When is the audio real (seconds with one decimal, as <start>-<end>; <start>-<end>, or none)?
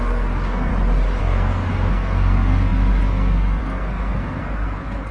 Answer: 0.7-1.2